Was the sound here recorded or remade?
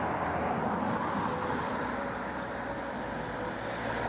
recorded